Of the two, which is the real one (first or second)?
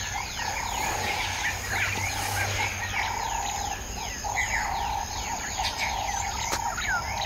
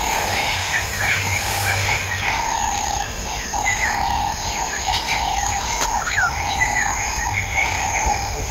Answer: first